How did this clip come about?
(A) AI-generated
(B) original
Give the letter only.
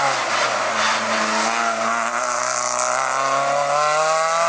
B